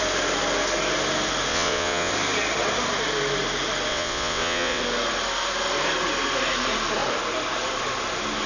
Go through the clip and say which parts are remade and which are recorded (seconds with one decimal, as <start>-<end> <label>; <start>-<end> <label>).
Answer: 0.0-1.5 recorded; 1.5-2.1 remade; 2.1-3.9 recorded; 3.9-4.8 remade; 4.8-8.5 recorded